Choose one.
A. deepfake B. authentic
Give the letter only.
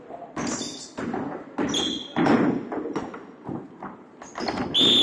B